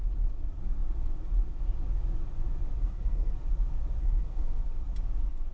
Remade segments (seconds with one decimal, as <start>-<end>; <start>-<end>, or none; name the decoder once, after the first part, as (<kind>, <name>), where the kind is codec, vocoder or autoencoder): 2.8-3.3 (codec, SNAC); 4.0-4.6